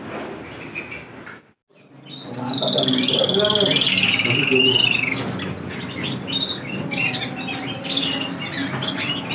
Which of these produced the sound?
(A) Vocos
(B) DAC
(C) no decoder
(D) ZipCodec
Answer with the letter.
C